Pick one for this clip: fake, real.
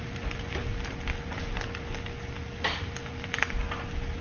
real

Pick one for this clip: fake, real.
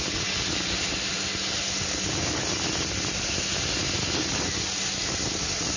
real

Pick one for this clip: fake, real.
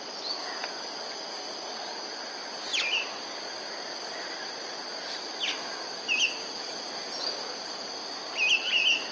real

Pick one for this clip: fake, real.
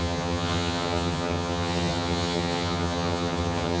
fake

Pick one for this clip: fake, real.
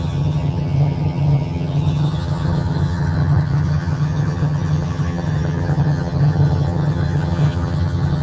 fake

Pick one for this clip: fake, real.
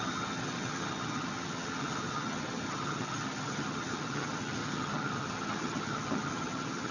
fake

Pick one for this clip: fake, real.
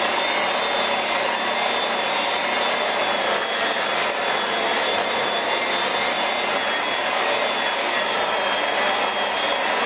real